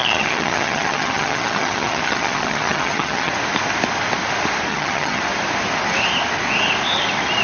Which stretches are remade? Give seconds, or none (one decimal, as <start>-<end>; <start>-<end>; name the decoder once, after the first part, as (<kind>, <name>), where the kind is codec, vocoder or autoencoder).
0.0-3.3 (vocoder, HiFi-GAN); 4.7-5.2